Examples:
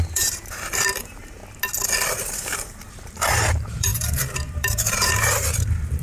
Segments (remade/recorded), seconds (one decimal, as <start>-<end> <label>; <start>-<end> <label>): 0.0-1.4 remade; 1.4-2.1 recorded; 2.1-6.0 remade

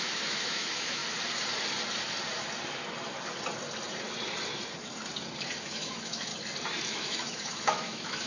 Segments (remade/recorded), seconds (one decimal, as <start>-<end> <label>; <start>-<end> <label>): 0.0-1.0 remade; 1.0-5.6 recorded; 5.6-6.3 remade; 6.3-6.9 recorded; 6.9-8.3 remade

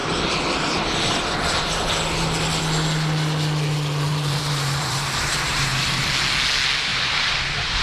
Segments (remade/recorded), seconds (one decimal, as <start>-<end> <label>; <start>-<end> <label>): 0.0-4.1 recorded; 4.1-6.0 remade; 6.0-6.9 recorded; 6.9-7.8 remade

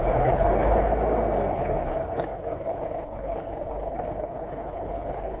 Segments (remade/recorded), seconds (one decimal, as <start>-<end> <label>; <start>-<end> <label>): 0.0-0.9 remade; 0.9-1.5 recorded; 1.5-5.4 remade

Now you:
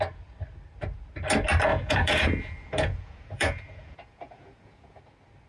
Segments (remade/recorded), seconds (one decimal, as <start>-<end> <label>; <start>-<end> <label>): 0.0-1.7 recorded; 1.7-5.0 remade; 5.0-5.5 recorded